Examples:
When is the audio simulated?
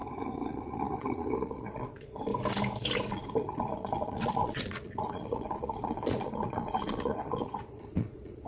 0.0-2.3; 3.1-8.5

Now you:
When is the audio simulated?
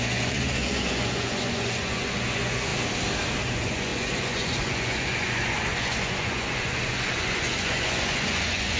0.0-2.7; 3.5-8.8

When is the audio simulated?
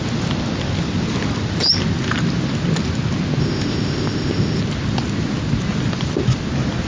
3.4-4.6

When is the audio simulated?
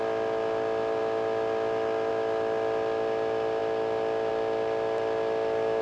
none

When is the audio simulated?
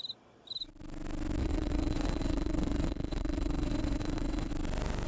1.4-4.5